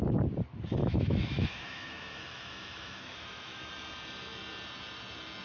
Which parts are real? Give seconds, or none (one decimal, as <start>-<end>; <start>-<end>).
0.0-0.8; 3.7-5.4